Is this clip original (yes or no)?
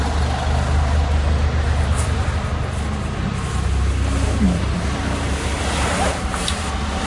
yes